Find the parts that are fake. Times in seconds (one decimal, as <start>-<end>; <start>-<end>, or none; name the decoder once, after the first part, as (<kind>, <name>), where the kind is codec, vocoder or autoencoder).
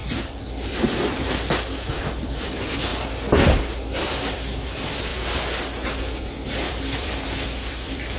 0.0-2.9 (vocoder, BigVGAN v2); 4.0-5.1; 6.2-8.2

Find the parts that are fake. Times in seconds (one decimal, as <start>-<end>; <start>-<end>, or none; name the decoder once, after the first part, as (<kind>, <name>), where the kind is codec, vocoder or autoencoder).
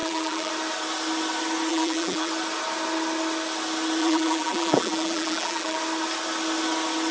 0.0-0.5 (vocoder, BigVGAN v2); 1.7-2.3; 4.0-5.8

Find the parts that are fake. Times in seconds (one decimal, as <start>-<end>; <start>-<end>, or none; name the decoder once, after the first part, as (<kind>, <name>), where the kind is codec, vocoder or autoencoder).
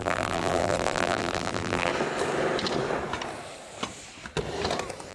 0.0-1.9 (vocoder, BigVGAN v2)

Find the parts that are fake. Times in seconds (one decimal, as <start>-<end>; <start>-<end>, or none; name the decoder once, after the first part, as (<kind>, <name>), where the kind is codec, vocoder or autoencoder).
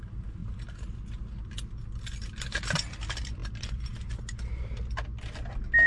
none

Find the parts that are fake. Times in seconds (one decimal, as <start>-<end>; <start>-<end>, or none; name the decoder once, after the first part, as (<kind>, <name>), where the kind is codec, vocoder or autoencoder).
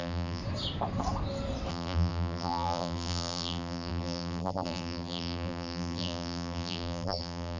0.0-0.4 (vocoder, BigVGAN v2); 1.7-7.6